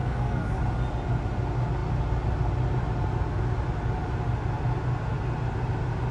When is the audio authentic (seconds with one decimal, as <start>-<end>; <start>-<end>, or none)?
0.6-6.1